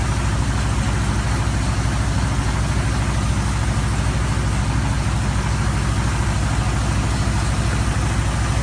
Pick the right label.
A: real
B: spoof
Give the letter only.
A